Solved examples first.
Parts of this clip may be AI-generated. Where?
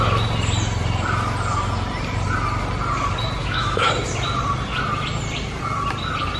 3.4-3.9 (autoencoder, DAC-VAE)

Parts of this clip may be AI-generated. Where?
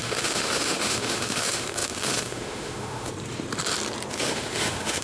0.0-3.1 (autoencoder, DAC-VAE); 4.1-5.0